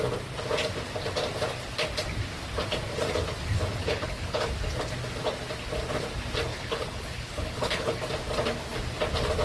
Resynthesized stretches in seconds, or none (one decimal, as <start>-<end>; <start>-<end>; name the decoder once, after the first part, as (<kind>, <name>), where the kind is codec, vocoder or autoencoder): 3.8-4.5 (codec, HILCodec); 6.5-8.0